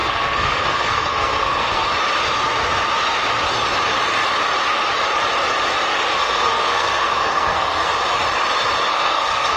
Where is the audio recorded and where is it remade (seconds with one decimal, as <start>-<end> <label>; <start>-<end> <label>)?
0.0-1.8 remade; 1.8-6.2 recorded; 6.2-7.9 remade; 7.9-8.9 recorded; 8.9-9.6 remade